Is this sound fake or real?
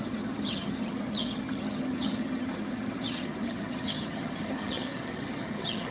fake